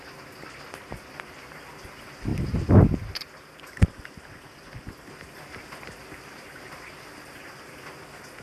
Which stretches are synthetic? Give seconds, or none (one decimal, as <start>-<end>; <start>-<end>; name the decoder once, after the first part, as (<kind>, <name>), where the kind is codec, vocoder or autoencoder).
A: none